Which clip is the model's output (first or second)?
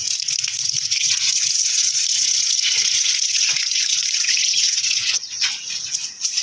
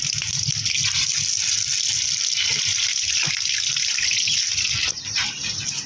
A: first